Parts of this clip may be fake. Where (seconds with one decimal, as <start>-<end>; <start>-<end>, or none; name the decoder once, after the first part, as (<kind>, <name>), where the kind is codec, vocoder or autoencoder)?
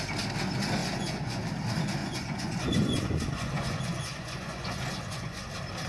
0.8-1.4 (vocoder, Vocos); 2.0-5.5